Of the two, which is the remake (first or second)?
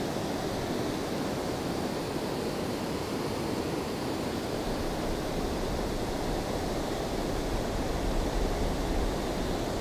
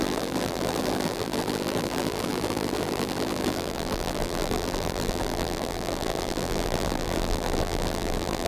second